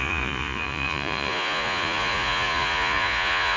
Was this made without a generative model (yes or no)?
no